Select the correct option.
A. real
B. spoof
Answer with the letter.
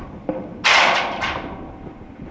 A